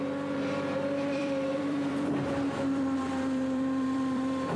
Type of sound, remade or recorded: remade